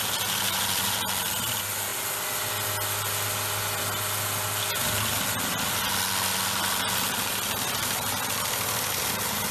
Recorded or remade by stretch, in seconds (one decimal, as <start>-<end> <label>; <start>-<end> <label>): 0.0-9.5 recorded